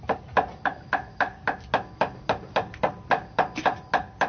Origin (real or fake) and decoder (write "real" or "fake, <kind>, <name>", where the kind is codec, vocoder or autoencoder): real